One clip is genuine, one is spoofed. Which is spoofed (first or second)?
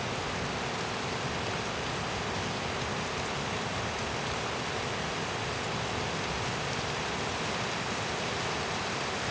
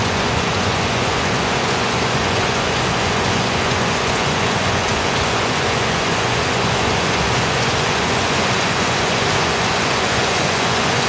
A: second